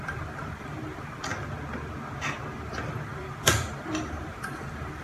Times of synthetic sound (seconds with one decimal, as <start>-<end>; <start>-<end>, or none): 0.0-1.3; 2.7-5.0